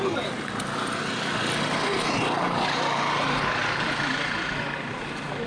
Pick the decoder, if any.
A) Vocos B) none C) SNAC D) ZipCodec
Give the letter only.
B